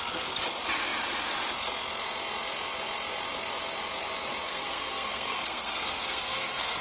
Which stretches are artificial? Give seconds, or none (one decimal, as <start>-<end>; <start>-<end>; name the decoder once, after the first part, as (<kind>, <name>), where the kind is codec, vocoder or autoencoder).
4.5-6.8 (codec, SNAC)